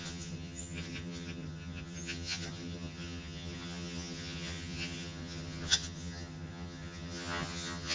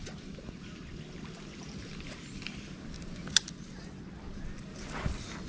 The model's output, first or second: first